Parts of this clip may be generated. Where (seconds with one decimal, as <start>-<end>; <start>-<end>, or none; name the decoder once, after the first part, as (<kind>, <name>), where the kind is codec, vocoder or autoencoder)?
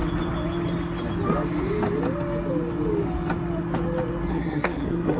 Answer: 4.3-5.2 (codec, SNAC)